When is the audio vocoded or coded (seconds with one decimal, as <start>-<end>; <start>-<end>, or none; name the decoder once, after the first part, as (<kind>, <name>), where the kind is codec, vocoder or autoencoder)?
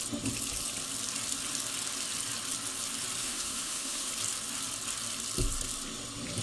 3.2-4.1 (autoencoder, DAC-VAE)